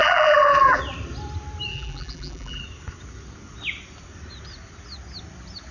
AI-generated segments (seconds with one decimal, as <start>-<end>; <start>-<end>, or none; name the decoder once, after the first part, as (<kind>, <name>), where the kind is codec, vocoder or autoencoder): 0.0-0.8 (vocoder, BigVGAN v2); 1.7-2.6